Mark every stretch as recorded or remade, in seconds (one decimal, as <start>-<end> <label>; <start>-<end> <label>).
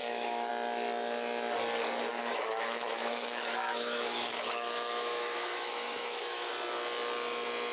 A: 0.0-0.5 remade; 0.5-2.1 recorded; 2.1-6.5 remade; 6.5-7.7 recorded